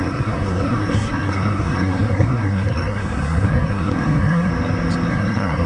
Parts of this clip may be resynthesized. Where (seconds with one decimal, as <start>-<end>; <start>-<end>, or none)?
0.0-4.5; 5.1-5.7